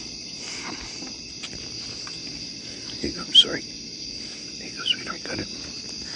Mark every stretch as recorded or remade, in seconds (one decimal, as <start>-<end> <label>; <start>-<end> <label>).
0.0-6.2 recorded